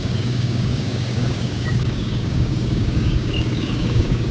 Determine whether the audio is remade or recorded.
remade